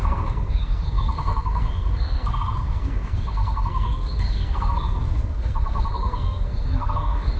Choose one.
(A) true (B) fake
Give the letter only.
B